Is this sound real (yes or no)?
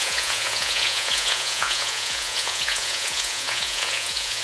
no